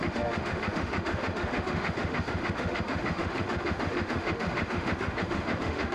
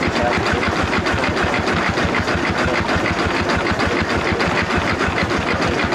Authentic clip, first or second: second